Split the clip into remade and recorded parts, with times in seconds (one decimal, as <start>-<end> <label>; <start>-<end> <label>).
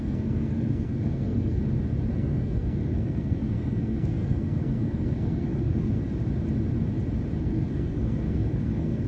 0.0-1.6 remade; 1.6-2.1 recorded; 2.1-6.0 remade; 6.0-7.4 recorded; 7.4-9.1 remade